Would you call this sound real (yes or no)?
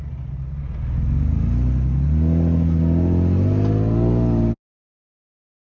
yes